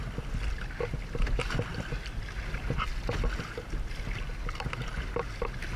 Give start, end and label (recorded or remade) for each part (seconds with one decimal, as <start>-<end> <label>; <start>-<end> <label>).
0.0-5.8 recorded